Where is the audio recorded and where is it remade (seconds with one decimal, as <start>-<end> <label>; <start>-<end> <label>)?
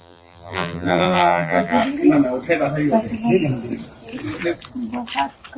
0.0-1.8 remade; 1.8-5.6 recorded